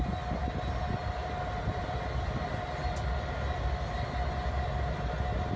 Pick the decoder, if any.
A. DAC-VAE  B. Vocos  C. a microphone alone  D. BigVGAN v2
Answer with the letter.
C